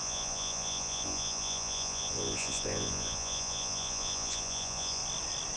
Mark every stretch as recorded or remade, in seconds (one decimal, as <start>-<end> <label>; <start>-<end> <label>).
0.0-5.0 remade; 5.0-5.6 recorded